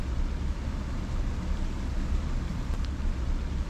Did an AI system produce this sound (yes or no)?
no